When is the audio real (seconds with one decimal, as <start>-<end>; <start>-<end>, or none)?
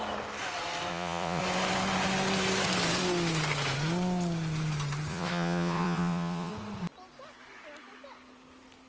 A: 0.0-0.9; 1.4-5.1; 6.5-8.9